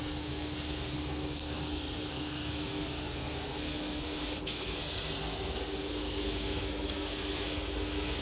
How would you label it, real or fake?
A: fake